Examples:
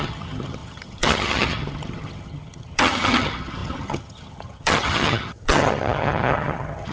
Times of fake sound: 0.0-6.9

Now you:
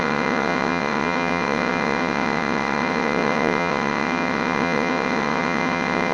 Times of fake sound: 0.0-6.1

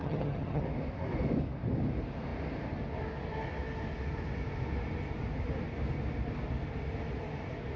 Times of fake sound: 0.0-0.6

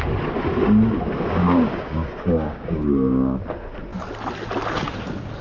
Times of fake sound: 1.4-3.4

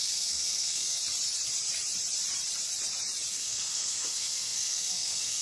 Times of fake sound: 0.0-1.0; 3.3-5.4